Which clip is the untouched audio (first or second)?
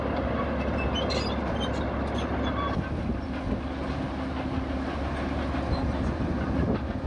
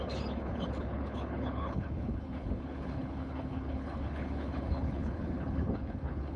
first